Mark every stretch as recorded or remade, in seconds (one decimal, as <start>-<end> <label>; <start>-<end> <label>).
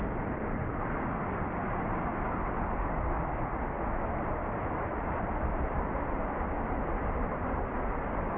0.0-8.4 recorded